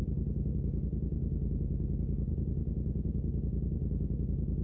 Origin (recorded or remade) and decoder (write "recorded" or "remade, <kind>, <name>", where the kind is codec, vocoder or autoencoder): recorded